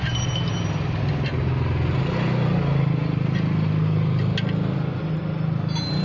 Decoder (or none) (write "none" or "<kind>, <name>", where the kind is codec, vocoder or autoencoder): none